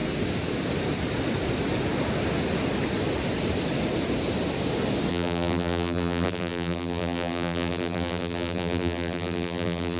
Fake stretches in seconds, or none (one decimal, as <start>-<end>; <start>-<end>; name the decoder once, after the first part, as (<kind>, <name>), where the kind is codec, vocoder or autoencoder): 5.1-10.0 (vocoder, BigVGAN v2)